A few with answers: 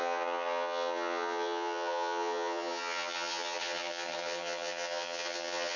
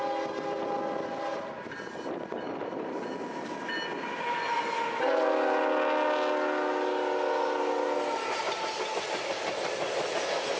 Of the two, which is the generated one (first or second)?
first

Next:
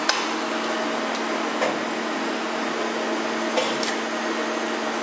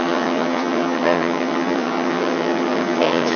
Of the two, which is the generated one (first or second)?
second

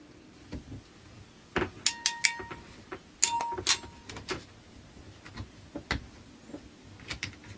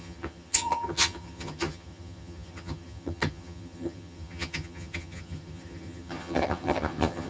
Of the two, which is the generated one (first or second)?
second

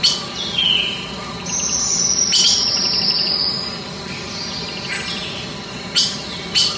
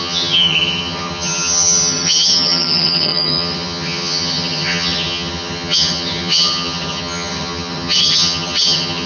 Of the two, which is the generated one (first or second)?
second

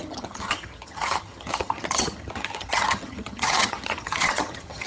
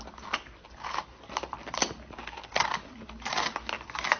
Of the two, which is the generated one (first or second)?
first